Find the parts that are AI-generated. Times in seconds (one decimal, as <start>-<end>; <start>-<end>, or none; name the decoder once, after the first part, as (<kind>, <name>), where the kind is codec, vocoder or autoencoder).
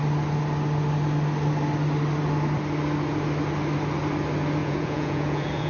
4.6-5.7 (vocoder, Vocos)